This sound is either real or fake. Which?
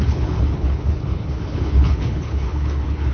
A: fake